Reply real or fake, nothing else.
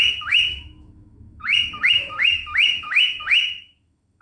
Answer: fake